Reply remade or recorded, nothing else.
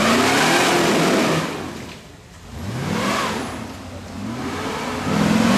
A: recorded